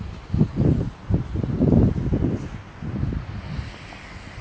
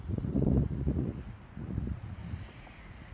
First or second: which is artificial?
second